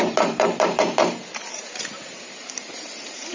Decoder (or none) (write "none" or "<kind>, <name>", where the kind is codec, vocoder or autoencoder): vocoder, BigVGAN v2